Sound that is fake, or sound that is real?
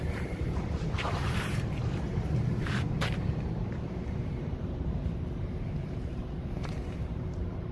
fake